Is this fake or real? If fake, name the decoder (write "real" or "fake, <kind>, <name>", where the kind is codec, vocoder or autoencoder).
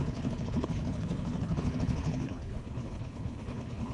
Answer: fake, codec, HILCodec